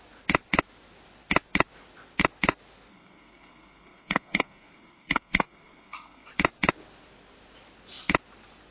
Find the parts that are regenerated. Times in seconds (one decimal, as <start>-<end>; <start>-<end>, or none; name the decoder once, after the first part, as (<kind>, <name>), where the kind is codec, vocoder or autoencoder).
2.9-6.3 (codec, SNAC)